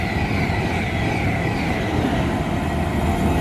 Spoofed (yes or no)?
no